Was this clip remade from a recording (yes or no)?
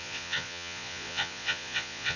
yes